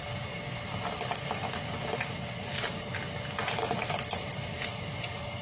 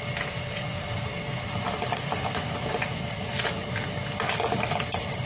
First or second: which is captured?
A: first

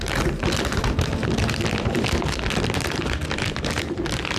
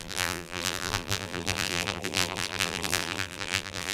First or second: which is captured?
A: first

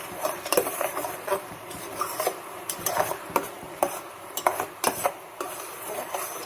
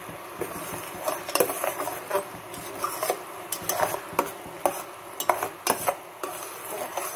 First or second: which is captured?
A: second